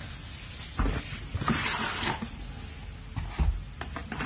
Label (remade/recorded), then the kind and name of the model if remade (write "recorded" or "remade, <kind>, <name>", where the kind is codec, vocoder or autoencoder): recorded